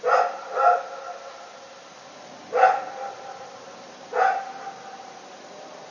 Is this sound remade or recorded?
recorded